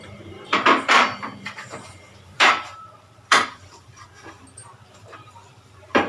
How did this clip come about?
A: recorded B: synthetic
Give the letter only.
B